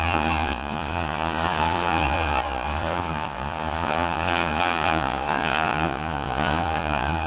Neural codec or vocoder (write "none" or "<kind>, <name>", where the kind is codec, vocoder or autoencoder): vocoder, Vocos